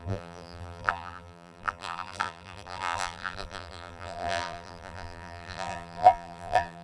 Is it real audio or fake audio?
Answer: fake